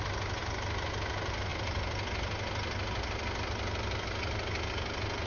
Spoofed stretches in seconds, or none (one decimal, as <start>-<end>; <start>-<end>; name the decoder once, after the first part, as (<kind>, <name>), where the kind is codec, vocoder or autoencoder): none